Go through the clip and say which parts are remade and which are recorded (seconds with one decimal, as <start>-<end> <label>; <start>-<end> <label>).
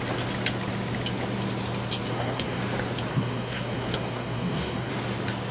0.0-2.1 recorded; 2.1-2.6 remade; 2.6-3.1 recorded; 3.1-4.9 remade; 4.9-5.5 recorded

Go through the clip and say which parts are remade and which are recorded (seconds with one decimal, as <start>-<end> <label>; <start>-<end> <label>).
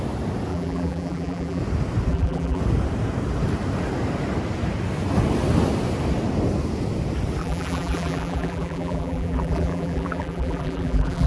0.0-0.5 recorded; 0.5-1.6 remade; 1.6-2.1 recorded; 2.1-2.6 remade; 2.6-7.4 recorded; 7.4-11.3 remade